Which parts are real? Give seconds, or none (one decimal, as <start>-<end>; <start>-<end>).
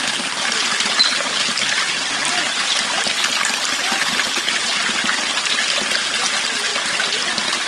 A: 0.0-2.2; 3.4-7.7